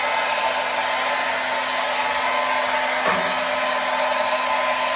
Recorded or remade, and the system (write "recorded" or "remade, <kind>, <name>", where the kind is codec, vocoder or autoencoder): recorded